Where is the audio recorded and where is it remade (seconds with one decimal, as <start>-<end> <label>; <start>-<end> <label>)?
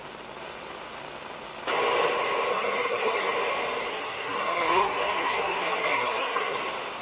0.0-2.5 recorded; 2.5-3.3 remade; 3.3-3.9 recorded; 3.9-6.6 remade; 6.6-7.0 recorded